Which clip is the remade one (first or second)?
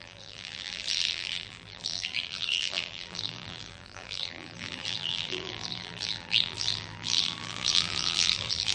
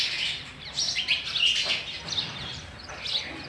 first